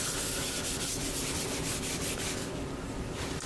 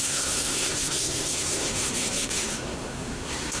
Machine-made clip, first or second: second